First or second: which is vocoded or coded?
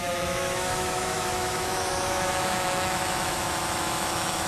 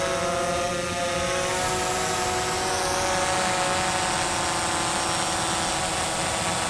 first